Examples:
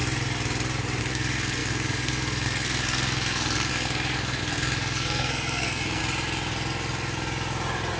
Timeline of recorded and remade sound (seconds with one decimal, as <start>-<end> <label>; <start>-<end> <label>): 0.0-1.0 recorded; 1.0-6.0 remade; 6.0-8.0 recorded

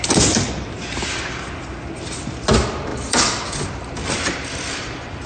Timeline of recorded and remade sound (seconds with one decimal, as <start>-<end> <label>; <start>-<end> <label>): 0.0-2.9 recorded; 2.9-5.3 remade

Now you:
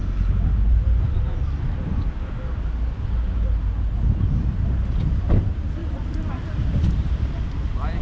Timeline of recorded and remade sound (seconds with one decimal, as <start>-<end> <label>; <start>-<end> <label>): 0.0-0.7 recorded; 0.7-1.2 remade; 1.2-5.8 recorded; 5.8-7.3 remade; 7.3-8.0 recorded

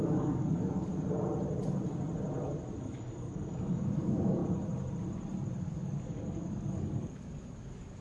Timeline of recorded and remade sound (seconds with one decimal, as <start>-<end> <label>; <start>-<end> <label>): 0.0-0.9 remade; 0.9-2.8 recorded; 2.8-4.4 remade; 4.4-5.6 recorded; 5.6-8.0 remade

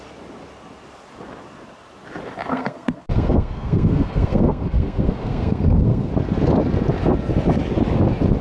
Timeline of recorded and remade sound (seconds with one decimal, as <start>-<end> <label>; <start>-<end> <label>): 0.0-2.5 recorded; 2.5-6.1 remade; 6.1-8.4 recorded

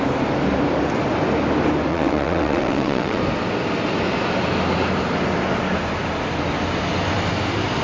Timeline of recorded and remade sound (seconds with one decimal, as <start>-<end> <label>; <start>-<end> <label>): 0.0-1.9 recorded; 1.9-3.2 remade; 3.2-7.8 recorded

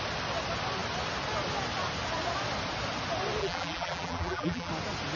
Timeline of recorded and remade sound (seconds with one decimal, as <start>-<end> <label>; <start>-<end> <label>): 0.0-3.4 recorded; 3.4-4.7 remade; 4.7-5.2 recorded